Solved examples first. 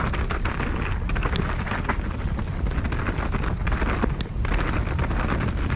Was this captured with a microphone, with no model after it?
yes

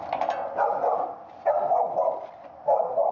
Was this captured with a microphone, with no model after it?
yes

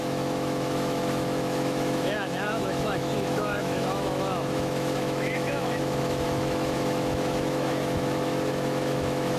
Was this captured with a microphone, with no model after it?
no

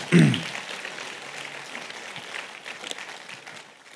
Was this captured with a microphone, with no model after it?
yes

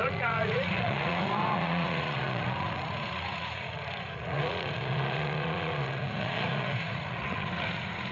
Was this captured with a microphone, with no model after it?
no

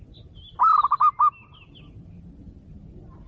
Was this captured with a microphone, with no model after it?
yes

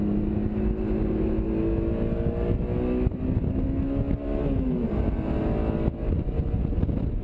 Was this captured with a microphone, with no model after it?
yes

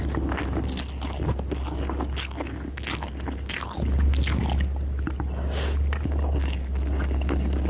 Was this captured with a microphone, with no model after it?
yes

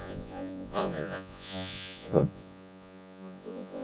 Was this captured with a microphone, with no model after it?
no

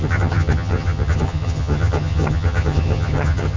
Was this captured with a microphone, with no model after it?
no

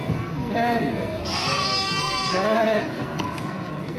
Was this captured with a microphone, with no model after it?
no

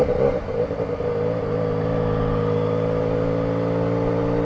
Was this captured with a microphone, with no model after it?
yes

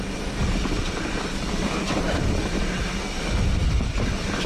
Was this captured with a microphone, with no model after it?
yes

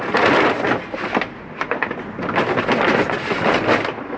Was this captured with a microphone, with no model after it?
yes